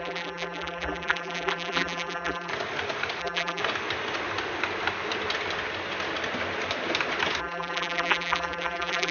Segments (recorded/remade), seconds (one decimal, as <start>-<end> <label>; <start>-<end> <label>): 0.0-2.5 remade; 2.5-3.2 recorded; 3.2-3.6 remade; 3.6-7.4 recorded; 7.4-9.1 remade